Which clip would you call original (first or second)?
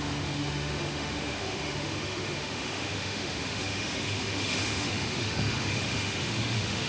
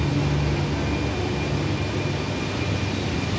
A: second